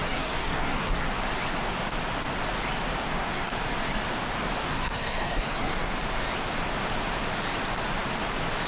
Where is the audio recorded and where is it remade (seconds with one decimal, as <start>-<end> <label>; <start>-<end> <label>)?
0.0-1.1 remade; 1.1-3.0 recorded; 3.0-3.5 remade; 3.5-4.6 recorded; 4.6-5.9 remade; 5.9-8.7 recorded